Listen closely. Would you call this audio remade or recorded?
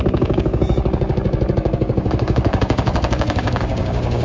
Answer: remade